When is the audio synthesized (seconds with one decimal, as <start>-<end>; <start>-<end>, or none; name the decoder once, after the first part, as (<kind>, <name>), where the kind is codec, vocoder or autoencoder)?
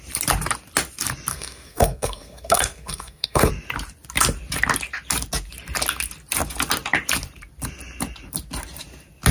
1.3-3.5 (codec, SNAC)